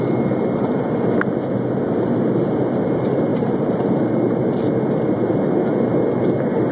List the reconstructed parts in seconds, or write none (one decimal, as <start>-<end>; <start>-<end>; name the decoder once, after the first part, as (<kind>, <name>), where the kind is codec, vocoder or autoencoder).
3.3-4.7 (vocoder, BigVGAN v2)